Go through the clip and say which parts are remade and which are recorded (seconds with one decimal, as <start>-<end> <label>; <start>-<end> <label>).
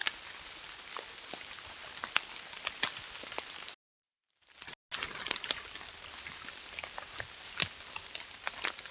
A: 0.0-8.9 recorded